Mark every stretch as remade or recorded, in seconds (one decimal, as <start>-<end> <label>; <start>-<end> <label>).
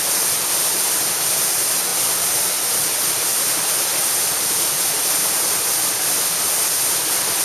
0.0-7.4 recorded